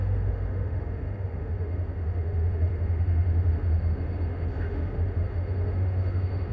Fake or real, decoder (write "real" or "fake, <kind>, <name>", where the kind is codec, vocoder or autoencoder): fake, autoencoder, DAC-VAE